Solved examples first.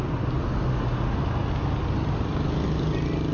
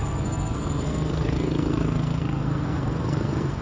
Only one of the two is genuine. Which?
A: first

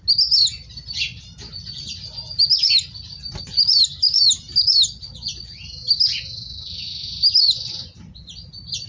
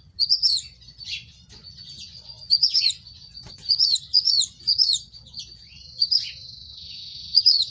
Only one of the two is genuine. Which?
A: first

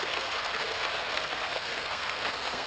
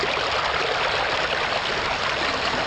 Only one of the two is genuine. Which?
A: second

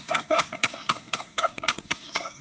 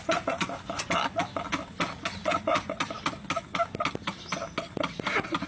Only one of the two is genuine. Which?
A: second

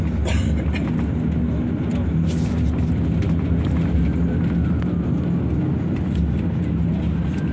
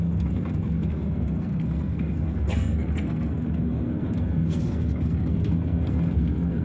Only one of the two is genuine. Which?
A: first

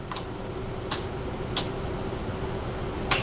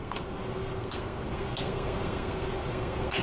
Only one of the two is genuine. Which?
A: first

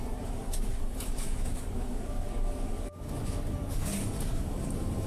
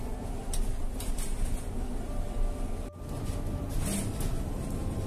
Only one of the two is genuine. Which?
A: second